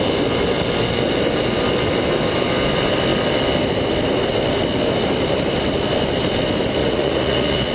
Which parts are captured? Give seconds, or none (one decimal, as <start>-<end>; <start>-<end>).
0.0-6.8